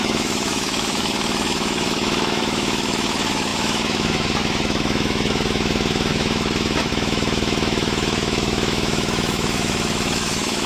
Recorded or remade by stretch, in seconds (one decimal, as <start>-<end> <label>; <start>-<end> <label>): 0.0-10.7 remade